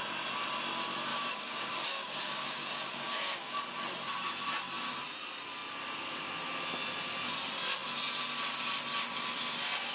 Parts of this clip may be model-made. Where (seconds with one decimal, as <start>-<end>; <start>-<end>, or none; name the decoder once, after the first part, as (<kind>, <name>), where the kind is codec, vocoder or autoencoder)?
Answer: 1.1-3.6 (codec, DAC)